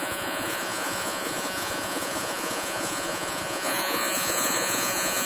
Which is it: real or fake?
fake